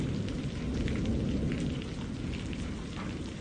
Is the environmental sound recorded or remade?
recorded